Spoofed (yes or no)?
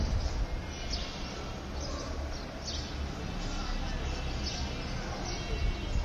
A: no